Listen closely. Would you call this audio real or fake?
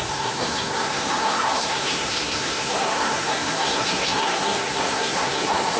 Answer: fake